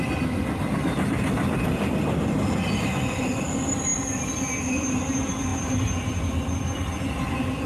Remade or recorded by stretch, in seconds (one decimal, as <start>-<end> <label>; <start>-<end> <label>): 0.0-7.7 recorded